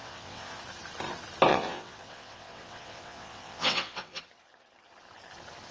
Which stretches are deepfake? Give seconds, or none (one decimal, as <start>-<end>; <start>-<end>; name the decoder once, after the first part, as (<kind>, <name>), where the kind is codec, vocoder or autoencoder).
0.0-0.6 (vocoder, WaveNeXt); 1.5-4.2